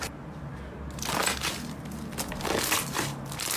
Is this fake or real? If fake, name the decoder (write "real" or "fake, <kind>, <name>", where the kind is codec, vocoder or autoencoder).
real